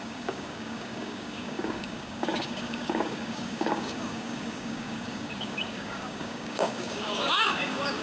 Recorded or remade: remade